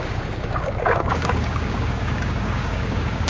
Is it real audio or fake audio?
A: fake